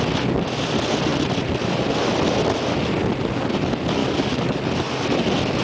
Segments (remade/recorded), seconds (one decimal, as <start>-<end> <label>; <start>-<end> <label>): 0.0-4.0 recorded; 4.0-4.6 remade; 4.6-5.6 recorded